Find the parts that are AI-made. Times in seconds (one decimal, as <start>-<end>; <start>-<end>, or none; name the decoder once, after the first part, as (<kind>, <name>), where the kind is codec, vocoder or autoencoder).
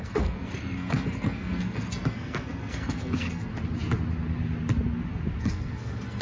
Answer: 0.0-3.5 (codec, SNAC); 5.4-6.2